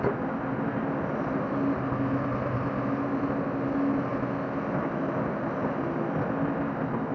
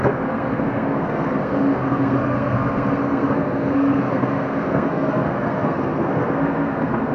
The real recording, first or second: first